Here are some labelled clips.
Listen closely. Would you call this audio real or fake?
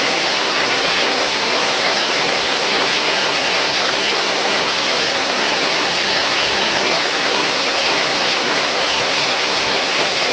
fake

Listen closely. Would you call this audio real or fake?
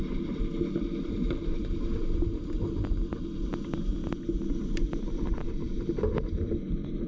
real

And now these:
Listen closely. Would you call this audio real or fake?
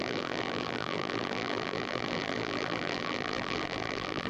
fake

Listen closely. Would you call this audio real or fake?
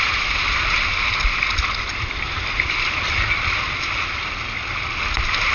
real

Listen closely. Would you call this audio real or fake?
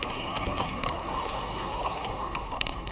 fake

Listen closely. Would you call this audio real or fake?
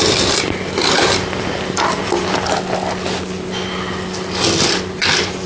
real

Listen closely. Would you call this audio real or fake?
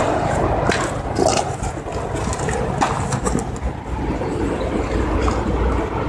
real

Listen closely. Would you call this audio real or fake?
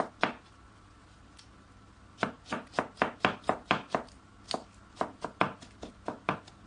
real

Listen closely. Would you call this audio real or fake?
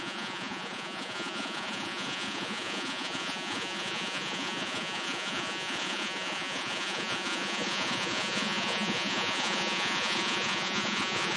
fake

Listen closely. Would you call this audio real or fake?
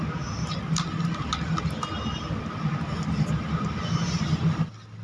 real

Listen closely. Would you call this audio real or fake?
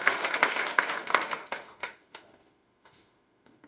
fake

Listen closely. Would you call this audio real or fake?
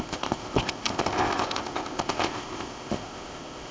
fake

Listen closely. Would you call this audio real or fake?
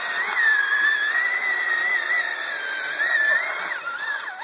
real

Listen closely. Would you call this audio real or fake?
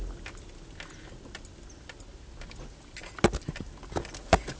real